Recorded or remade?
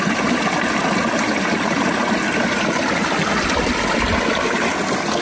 recorded